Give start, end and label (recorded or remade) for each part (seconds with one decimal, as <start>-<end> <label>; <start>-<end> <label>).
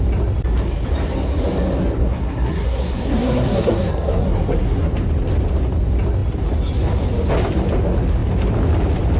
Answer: 0.0-2.0 recorded; 2.0-4.9 remade; 4.9-9.2 recorded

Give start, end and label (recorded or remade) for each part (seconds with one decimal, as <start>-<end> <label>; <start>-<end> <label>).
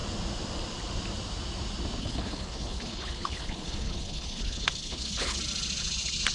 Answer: 0.0-2.0 recorded; 2.0-5.4 remade; 5.4-6.3 recorded